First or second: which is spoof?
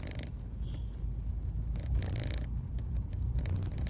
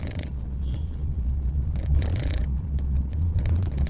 second